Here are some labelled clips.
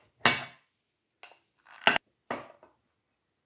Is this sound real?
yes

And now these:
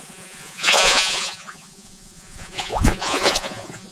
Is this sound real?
no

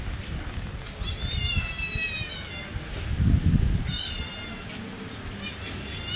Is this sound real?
yes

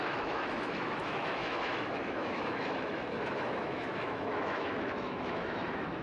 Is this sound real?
no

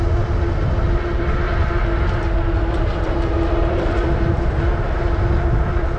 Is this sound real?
yes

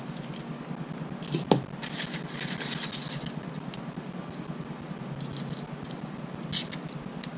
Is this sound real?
yes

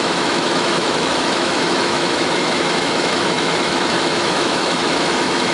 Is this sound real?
no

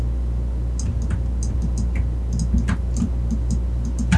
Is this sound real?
yes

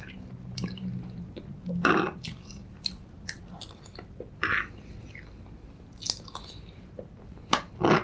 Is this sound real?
yes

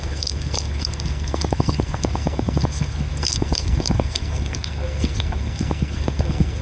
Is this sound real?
no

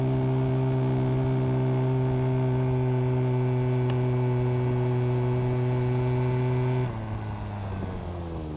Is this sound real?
yes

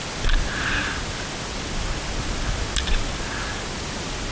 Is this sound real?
yes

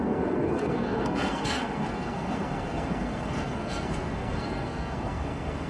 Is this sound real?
no